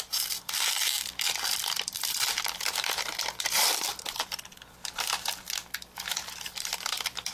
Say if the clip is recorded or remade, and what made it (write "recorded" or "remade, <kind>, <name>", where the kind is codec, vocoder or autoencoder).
remade, vocoder, BigVGAN v2